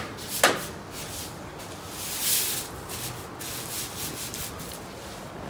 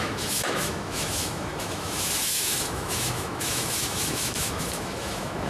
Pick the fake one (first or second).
second